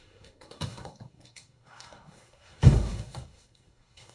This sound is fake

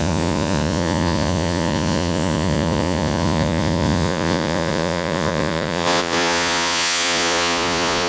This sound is fake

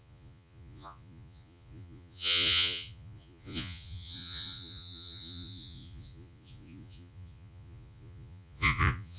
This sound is fake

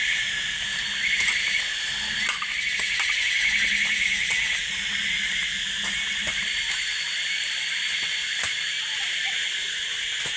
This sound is real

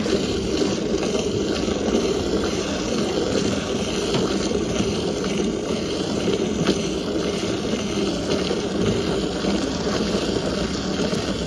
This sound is real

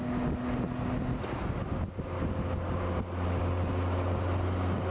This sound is real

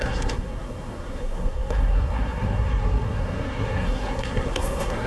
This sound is fake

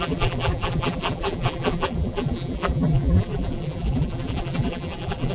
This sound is fake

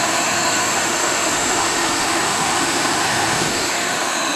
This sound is fake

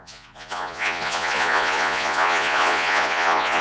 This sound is fake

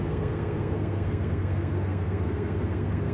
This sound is fake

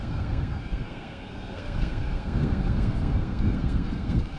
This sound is fake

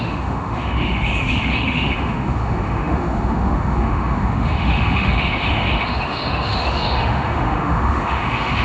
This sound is fake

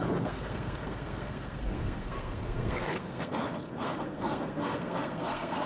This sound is fake